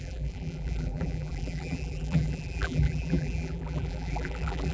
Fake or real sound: fake